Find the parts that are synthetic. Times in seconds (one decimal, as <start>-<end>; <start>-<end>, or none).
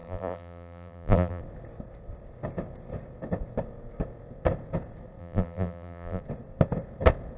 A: 0.0-1.4; 5.2-6.2